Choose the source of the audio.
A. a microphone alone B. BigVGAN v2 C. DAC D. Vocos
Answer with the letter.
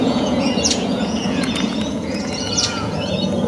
D